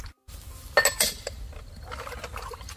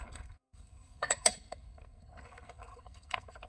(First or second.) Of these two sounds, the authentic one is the first